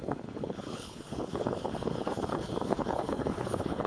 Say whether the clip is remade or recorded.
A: remade